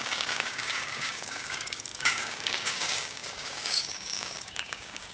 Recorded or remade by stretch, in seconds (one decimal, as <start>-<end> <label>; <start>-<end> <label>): 0.0-5.1 remade